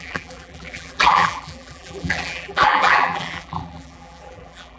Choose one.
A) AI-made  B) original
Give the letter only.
A